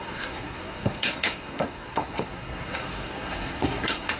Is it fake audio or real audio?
fake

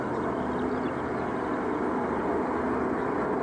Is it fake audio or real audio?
real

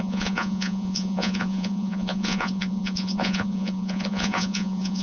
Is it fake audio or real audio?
fake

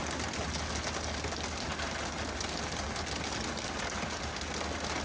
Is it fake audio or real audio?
real